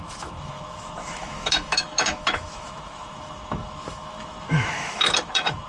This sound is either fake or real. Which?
fake